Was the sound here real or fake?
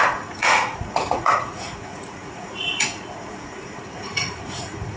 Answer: fake